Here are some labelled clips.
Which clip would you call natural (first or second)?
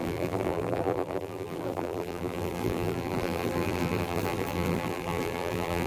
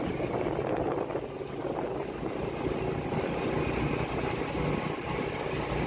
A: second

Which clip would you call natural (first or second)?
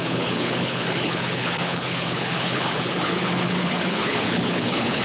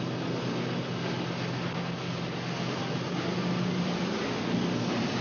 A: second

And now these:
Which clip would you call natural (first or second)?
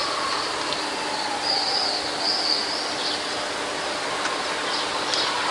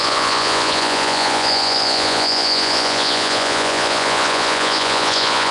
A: first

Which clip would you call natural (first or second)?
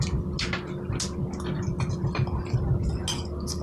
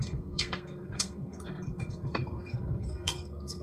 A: first